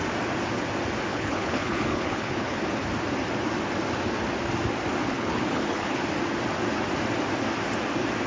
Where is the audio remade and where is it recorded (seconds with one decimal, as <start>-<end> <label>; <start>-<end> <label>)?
0.0-1.1 recorded; 1.1-2.6 remade; 2.6-5.1 recorded; 5.1-6.0 remade; 6.0-8.3 recorded